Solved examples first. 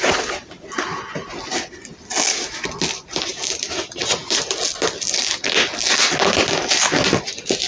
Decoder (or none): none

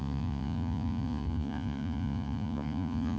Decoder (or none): vocoder, Vocos